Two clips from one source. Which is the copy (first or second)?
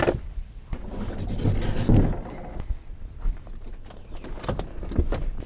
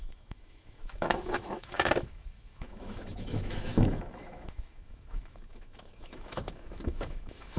second